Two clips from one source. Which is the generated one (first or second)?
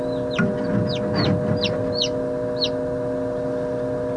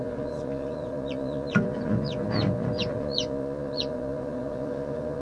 second